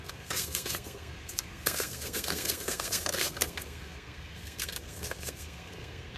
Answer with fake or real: fake